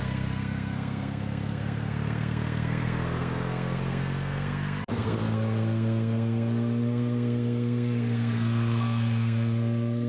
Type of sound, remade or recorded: remade